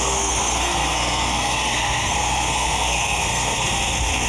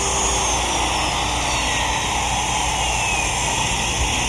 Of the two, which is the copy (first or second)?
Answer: first